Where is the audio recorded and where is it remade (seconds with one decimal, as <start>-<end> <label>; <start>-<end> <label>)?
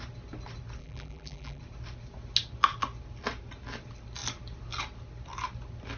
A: 0.0-0.8 recorded; 0.8-1.6 remade; 1.6-6.0 recorded